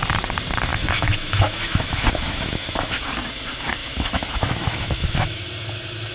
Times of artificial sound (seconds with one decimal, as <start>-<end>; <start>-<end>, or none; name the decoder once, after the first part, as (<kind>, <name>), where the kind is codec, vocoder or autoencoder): 0.7-3.0 (autoencoder, DAC-VAE); 3.8-5.4

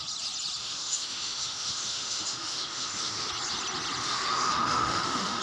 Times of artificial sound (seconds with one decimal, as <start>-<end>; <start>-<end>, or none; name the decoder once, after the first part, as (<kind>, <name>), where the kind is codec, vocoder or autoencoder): 0.6-3.3 (autoencoder, DAC-VAE); 4.0-5.4

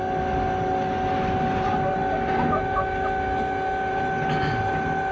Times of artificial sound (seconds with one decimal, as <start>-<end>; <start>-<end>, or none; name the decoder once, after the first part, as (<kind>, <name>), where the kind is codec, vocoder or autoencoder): none

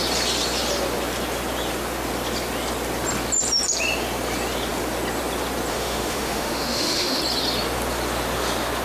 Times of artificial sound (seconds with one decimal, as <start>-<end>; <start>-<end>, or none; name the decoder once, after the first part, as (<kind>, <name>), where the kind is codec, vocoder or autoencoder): 5.7-7.2 (autoencoder, DAC-VAE)

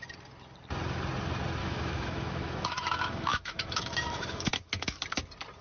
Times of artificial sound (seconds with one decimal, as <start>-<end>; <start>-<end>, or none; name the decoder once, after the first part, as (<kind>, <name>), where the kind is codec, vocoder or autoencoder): 1.6-5.0 (autoencoder, DAC-VAE)